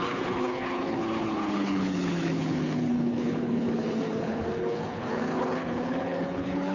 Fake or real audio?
fake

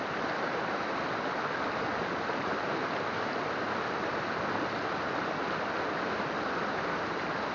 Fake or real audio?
real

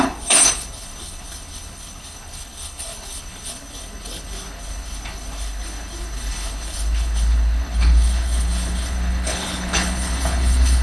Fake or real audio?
fake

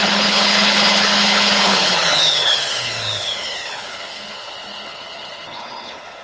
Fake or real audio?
fake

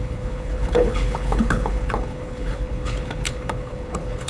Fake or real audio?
fake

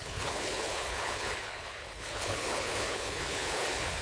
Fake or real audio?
fake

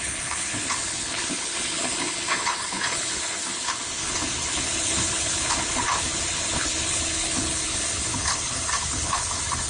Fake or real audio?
fake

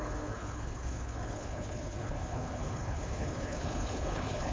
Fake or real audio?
fake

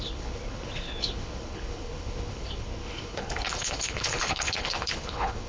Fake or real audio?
fake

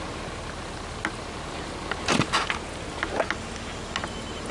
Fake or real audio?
real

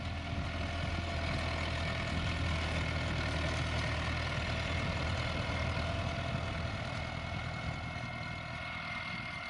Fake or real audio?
real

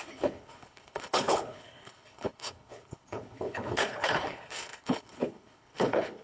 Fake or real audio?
fake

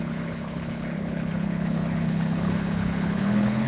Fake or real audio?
fake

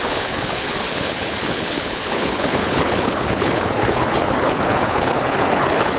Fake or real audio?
fake